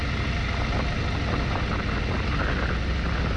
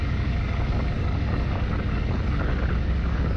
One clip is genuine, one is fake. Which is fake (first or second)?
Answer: second